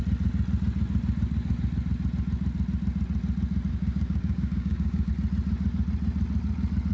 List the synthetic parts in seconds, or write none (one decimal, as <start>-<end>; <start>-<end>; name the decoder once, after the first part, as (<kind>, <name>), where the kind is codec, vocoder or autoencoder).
3.7-5.1 (codec, DAC)